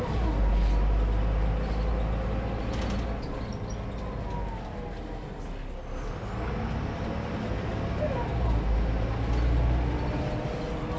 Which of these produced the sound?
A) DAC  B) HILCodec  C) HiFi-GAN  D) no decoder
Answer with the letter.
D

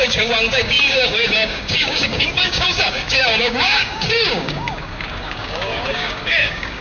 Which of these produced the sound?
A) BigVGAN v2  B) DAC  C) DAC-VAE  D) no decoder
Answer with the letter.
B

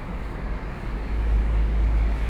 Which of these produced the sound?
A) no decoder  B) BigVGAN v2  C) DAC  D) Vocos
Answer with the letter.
C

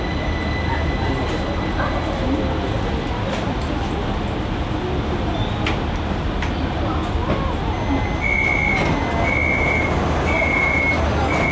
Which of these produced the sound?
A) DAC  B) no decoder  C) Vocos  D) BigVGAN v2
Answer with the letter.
B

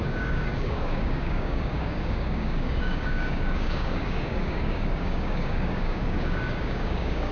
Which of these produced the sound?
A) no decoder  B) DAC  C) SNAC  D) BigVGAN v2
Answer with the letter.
B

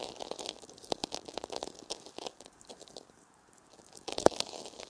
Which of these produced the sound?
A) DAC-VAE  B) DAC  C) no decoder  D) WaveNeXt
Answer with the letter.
B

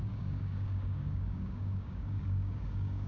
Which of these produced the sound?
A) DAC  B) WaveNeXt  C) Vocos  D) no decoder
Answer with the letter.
A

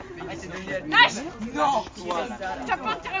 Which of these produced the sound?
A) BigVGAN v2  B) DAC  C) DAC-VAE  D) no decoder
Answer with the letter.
D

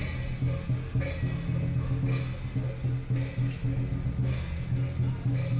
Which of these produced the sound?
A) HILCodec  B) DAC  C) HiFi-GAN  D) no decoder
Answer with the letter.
D